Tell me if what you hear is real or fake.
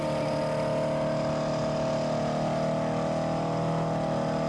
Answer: real